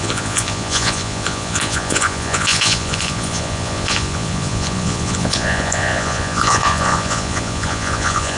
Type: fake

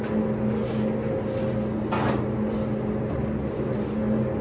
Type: real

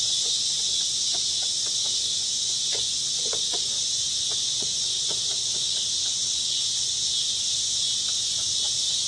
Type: fake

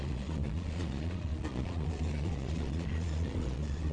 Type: fake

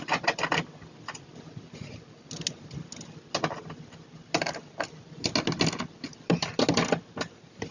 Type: real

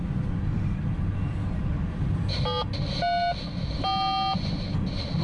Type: real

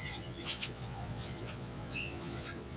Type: fake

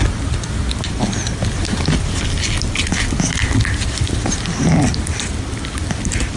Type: real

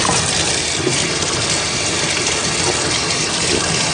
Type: real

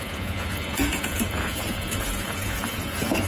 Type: fake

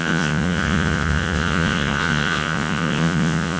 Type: fake